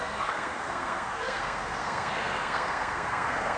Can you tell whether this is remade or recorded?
remade